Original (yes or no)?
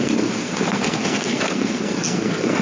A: no